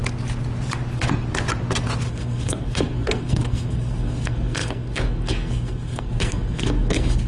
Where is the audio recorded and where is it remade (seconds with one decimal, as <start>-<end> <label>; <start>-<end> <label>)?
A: 0.0-2.1 recorded; 2.1-7.3 remade